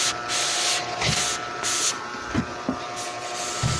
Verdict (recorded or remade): recorded